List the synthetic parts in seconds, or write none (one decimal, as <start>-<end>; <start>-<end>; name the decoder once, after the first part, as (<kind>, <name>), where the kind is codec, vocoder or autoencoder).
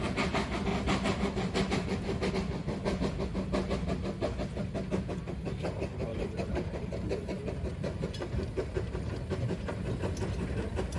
0.7-2.3 (vocoder, BigVGAN v2); 6.1-9.9